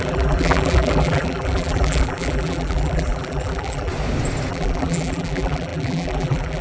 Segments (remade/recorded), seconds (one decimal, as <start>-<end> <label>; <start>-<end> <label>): 0.0-3.9 remade; 3.9-4.5 recorded; 4.5-6.6 remade